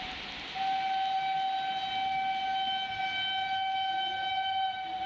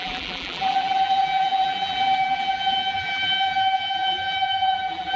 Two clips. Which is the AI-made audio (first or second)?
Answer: second